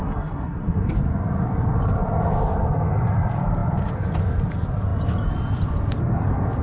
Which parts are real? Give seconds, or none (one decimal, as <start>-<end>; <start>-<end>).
0.9-6.6